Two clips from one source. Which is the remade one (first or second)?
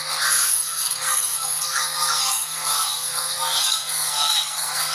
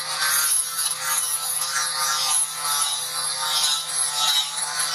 first